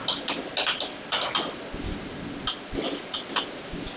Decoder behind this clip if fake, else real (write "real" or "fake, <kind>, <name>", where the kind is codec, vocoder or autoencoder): real